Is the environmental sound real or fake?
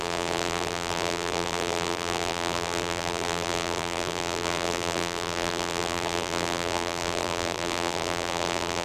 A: fake